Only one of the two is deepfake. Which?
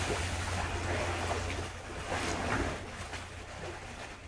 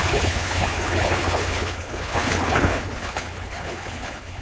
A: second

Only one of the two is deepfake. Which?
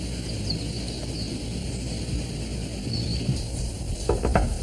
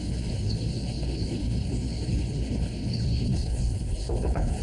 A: second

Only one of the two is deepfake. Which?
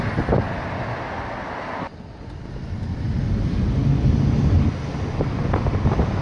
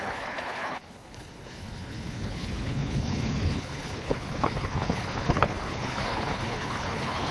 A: second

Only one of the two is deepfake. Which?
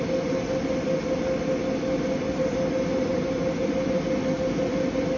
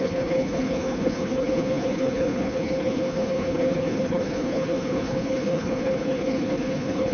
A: second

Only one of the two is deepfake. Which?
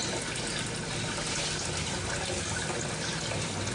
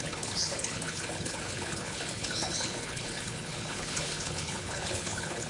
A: second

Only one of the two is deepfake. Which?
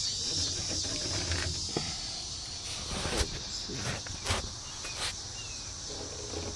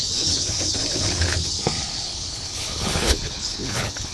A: second